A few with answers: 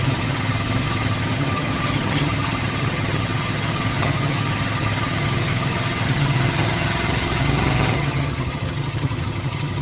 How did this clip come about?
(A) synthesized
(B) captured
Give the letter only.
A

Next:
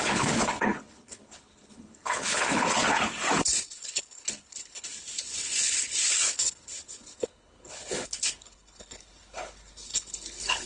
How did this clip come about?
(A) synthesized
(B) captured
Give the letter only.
A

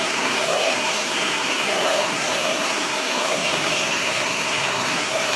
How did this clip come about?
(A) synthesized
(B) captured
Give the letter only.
A